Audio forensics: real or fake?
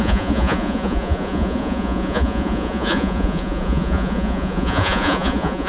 fake